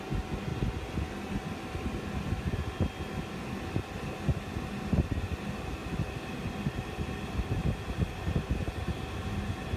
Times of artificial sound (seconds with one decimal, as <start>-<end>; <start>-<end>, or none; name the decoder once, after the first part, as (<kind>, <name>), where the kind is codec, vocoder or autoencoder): none